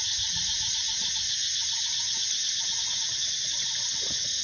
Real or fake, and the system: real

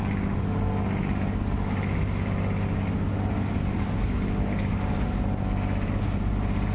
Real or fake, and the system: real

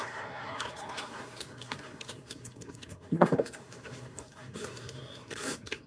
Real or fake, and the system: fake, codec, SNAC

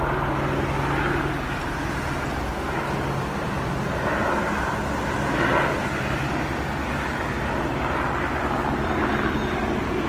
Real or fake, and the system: real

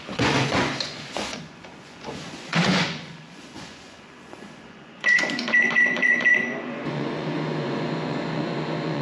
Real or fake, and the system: fake, vocoder, Vocos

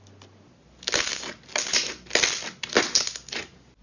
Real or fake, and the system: real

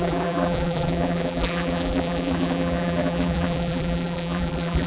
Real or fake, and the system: fake, vocoder, BigVGAN v2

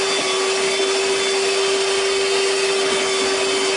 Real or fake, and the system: real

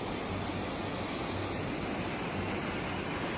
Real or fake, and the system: real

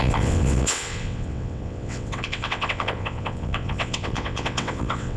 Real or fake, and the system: fake, vocoder, WaveNeXt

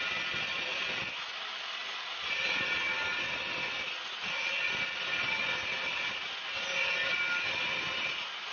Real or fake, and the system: real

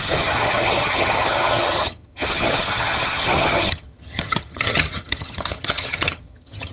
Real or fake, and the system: fake, vocoder, HiFi-GAN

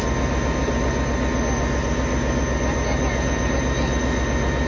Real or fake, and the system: real